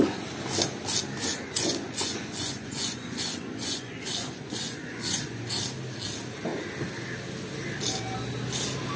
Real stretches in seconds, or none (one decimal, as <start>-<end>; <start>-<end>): 0.0-1.3; 5.5-9.0